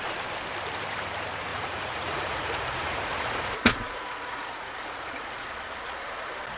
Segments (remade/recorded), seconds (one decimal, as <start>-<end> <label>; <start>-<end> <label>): 0.0-1.5 recorded; 1.5-5.5 remade; 5.5-6.6 recorded